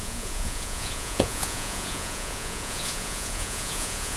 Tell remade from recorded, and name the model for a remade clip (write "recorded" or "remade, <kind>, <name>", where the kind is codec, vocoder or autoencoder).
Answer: remade, vocoder, Vocos